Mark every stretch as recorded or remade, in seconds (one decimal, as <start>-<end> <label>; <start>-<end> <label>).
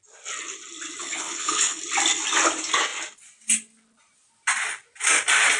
0.0-1.0 recorded; 1.0-1.8 remade; 1.8-5.6 recorded